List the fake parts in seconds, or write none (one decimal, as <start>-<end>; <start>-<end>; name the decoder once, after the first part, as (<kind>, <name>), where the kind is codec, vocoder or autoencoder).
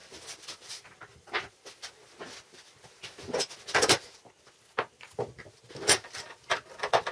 0.0-1.9 (vocoder, BigVGAN v2)